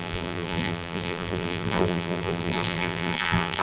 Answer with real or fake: fake